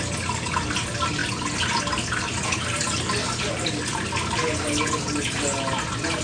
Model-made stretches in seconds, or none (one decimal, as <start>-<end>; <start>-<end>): none